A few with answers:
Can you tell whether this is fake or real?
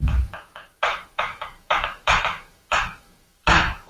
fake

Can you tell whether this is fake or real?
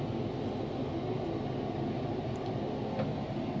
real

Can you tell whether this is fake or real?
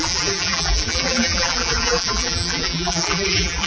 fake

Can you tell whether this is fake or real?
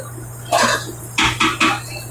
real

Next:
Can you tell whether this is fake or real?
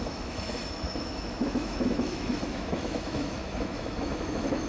fake